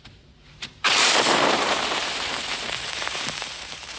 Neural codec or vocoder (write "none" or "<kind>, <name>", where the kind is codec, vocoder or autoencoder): vocoder, BigVGAN v2